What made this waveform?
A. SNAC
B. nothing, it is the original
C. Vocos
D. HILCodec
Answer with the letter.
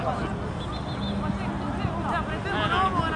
B